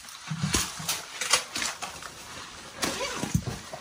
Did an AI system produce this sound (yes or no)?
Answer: no